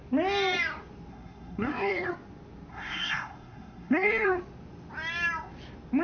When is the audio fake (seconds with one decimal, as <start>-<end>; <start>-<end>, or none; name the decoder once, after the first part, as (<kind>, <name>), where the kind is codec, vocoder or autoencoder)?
1.1-2.1 (codec, SNAC); 2.7-4.4